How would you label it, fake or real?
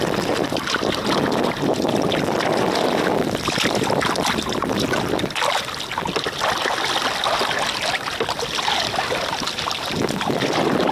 real